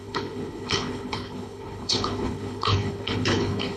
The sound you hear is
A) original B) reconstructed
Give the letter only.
B